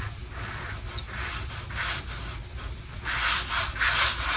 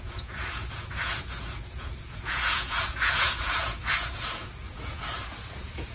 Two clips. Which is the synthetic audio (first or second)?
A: second